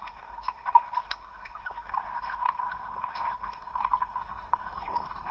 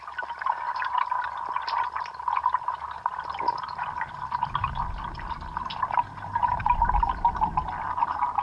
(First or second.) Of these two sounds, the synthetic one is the first